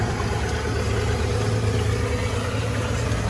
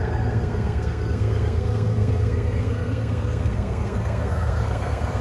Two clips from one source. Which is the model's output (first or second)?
second